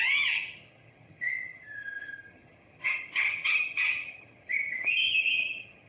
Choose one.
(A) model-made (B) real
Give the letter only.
A